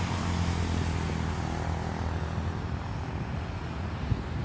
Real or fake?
real